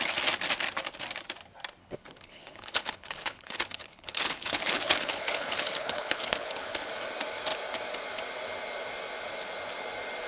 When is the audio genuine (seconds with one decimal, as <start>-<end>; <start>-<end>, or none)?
0.0-1.8; 6.9-10.3